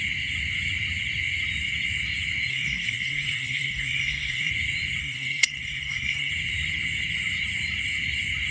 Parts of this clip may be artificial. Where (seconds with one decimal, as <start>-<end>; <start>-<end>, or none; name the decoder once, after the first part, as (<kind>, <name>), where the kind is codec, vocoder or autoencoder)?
2.5-4.5 (codec, SNAC); 5.0-6.3